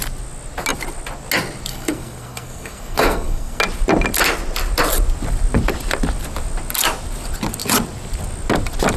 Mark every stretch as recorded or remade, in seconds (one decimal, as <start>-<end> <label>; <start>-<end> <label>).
0.0-1.7 recorded; 1.7-3.6 remade; 3.6-9.0 recorded